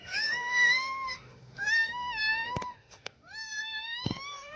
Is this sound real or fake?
fake